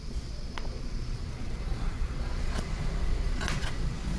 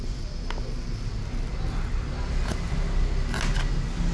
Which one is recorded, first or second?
second